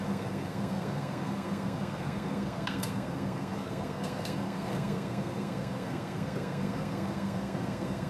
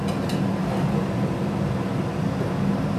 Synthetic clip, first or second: first